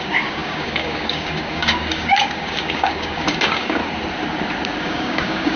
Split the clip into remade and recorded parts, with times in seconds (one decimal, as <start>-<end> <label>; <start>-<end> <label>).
0.0-3.8 remade; 3.8-4.8 recorded; 4.8-5.6 remade